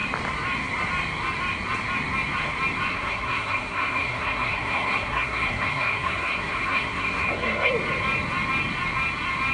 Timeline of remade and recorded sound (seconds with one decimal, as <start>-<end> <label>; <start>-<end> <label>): 0.0-2.9 recorded; 2.9-7.7 remade; 7.7-9.5 recorded

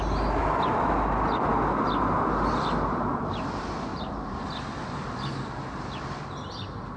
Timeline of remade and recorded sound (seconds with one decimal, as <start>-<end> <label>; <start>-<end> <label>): 0.0-3.9 recorded; 3.9-4.6 remade; 4.6-7.0 recorded

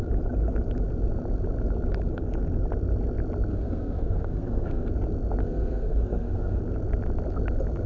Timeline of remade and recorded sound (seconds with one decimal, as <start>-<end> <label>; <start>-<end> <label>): 0.0-3.5 recorded; 3.5-4.9 remade; 4.9-5.4 recorded; 5.4-6.6 remade; 6.6-7.9 recorded

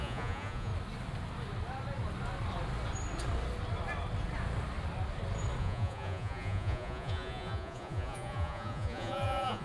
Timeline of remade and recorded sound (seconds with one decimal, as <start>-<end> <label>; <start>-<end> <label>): 0.0-0.7 remade; 0.7-5.6 recorded; 5.6-9.6 remade

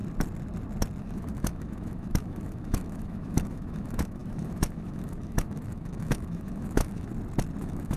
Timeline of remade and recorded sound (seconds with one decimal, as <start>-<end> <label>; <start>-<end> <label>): 0.0-1.0 recorded; 1.0-7.1 remade; 7.1-7.6 recorded; 7.6-8.0 remade

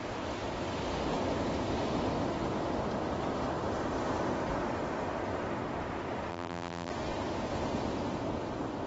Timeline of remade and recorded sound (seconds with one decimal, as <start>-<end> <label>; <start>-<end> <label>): 0.0-6.3 recorded; 6.3-6.9 remade; 6.9-8.9 recorded

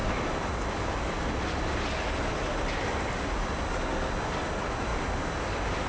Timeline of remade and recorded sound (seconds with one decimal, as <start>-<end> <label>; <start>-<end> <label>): 0.0-5.9 recorded

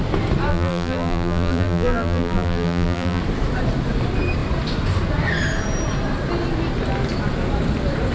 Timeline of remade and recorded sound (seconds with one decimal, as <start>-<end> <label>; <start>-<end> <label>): 0.0-0.5 recorded; 0.5-3.2 remade; 3.2-8.1 recorded